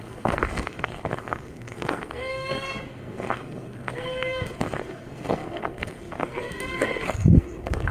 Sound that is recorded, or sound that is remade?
remade